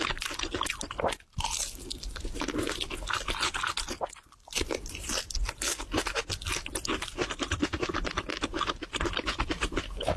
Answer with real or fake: real